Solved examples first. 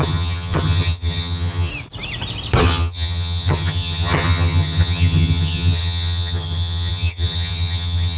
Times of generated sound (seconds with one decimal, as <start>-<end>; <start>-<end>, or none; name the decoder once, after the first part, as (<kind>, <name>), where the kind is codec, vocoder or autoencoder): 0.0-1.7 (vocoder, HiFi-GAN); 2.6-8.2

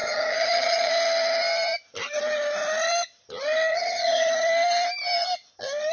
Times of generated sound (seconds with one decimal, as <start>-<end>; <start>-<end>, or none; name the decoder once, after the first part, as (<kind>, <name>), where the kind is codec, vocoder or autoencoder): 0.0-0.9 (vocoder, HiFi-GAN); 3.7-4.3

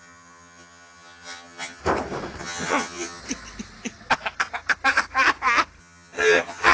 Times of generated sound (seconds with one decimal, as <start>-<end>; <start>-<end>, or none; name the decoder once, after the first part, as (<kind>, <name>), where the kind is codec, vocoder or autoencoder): 0.0-1.8 (vocoder, HiFi-GAN); 2.4-3.2; 5.8-6.7

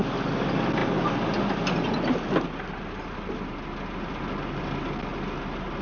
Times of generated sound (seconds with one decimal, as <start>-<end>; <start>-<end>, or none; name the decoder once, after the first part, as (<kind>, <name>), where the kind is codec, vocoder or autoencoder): none

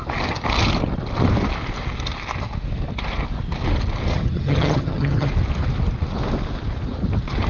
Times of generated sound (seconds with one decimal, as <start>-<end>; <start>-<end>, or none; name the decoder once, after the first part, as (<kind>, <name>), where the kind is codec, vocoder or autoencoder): 4.1-5.3 (vocoder, HiFi-GAN)

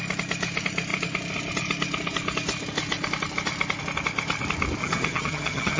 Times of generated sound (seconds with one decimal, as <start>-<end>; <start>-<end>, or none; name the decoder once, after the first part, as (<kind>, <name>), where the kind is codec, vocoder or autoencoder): 4.8-5.8 (vocoder, HiFi-GAN)

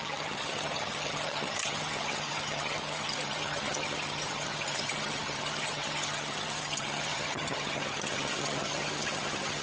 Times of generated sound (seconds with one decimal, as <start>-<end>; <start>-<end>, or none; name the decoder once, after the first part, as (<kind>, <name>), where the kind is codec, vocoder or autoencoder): 0.0-9.6 (vocoder, HiFi-GAN)